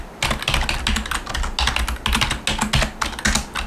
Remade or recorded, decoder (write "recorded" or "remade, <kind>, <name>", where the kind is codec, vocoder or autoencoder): recorded